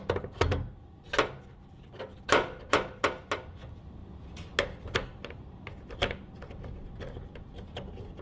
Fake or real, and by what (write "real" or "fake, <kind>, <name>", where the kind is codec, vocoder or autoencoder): real